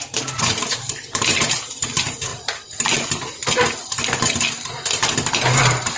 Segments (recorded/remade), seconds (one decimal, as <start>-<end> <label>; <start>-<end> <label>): 0.0-2.3 remade; 2.3-6.0 recorded